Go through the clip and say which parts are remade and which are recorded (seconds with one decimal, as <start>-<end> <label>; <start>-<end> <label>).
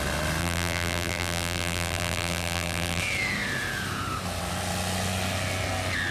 0.0-0.4 recorded; 0.4-3.0 remade; 3.0-6.1 recorded